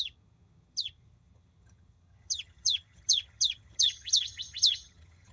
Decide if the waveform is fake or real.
fake